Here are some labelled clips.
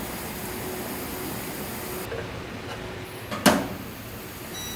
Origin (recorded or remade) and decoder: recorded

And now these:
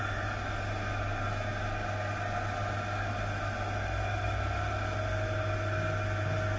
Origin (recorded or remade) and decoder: recorded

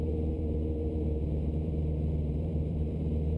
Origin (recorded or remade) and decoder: remade, vocoder, BigVGAN v2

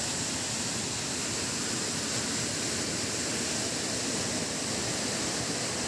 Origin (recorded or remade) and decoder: recorded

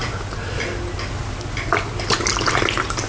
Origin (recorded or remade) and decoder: recorded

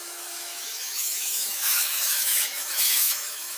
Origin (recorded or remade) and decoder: remade, autoencoder, DAC-VAE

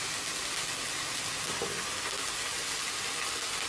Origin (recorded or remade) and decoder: recorded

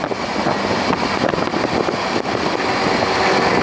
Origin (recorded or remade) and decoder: recorded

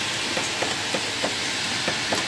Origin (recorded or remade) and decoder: recorded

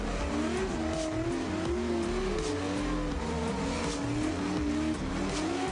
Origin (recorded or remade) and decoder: recorded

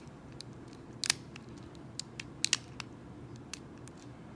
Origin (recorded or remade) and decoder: recorded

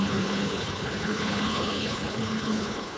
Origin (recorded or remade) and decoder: remade, codec, HILCodec